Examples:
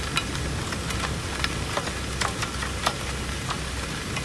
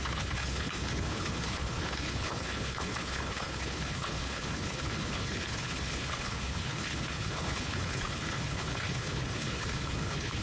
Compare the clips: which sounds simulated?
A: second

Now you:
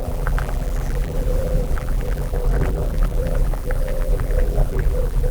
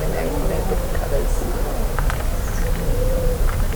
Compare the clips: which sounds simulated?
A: first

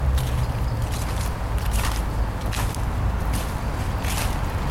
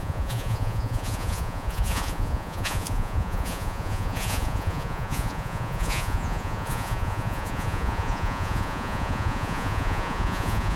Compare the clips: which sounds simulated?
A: second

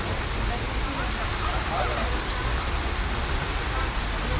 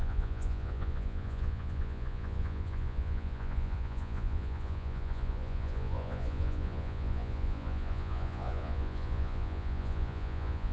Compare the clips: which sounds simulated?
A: second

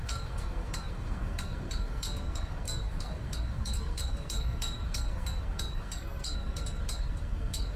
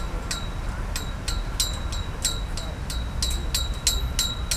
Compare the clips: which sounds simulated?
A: first